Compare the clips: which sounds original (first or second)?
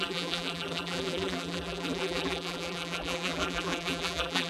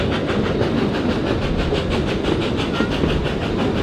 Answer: second